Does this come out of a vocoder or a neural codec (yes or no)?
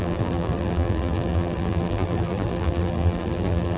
yes